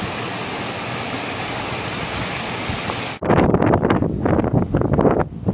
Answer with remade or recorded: recorded